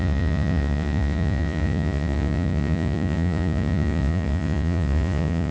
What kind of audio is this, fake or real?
fake